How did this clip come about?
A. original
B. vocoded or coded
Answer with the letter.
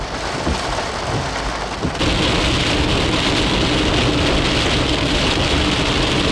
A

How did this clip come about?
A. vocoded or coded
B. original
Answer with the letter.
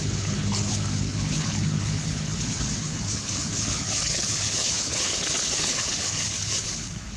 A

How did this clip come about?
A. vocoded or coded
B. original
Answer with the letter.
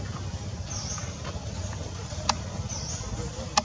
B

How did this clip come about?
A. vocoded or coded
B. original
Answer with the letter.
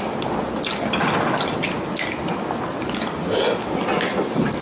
B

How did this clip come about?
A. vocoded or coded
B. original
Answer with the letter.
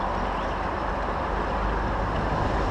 B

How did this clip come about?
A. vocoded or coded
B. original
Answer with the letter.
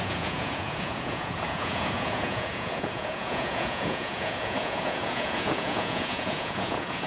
A